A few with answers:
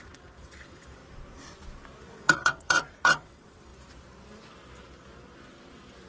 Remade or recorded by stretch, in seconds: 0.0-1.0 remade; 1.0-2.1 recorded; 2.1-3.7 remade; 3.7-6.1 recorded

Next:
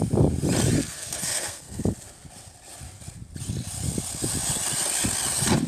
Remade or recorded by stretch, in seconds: 0.0-0.8 recorded; 0.8-1.8 remade; 1.8-5.7 recorded

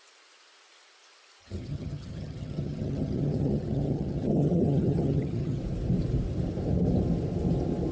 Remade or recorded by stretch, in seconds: 0.0-1.4 recorded; 1.4-5.6 remade; 5.6-7.9 recorded

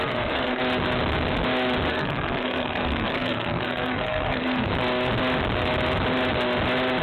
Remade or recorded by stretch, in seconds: 0.0-0.6 remade; 0.6-1.9 recorded; 1.9-4.7 remade; 4.7-7.0 recorded

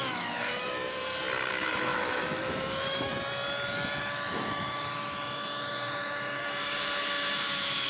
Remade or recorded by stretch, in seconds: 0.0-1.0 remade; 1.0-1.5 recorded; 1.5-3.1 remade; 3.1-4.0 recorded; 4.0-7.9 remade

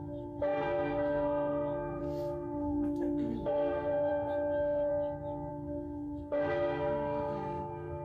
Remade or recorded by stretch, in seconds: 0.0-4.9 remade; 4.9-5.5 recorded; 5.5-8.0 remade